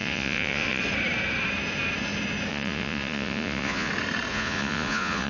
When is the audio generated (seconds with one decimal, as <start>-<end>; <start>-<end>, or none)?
0.0-0.8; 2.5-3.9; 4.3-5.3